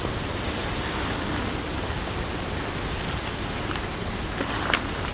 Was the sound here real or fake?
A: real